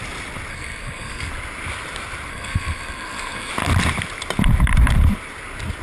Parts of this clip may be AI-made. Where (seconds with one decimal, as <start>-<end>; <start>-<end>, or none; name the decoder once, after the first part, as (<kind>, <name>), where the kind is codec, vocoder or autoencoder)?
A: 0.5-1.3 (codec, SNAC); 2.3-3.5